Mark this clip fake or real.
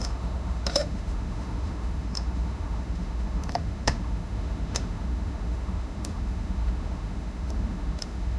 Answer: fake